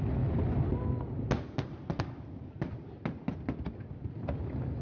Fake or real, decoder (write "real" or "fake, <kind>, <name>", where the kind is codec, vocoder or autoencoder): real